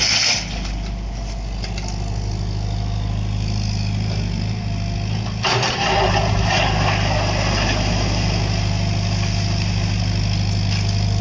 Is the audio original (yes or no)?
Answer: yes